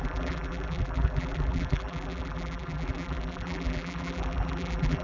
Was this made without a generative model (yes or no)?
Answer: no